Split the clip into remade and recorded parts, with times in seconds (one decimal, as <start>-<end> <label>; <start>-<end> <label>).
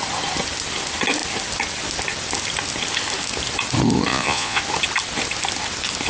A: 0.0-4.1 recorded; 4.1-4.6 remade; 4.6-6.1 recorded